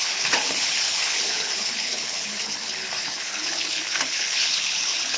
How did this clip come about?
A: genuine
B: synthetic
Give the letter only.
B